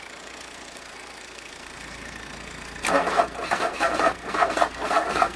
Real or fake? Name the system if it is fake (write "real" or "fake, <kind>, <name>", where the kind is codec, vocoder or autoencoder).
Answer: fake, codec, SNAC